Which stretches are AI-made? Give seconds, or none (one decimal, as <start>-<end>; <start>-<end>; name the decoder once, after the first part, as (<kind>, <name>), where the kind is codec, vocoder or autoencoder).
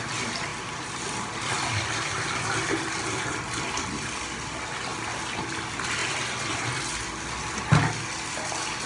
none